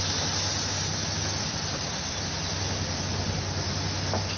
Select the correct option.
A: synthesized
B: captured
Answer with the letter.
B